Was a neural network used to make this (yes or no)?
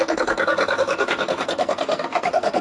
yes